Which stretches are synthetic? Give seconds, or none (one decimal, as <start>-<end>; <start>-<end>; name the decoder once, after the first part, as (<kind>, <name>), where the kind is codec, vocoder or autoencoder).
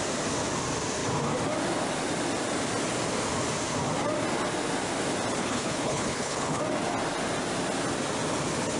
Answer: 5.4-6.6 (codec, HILCodec)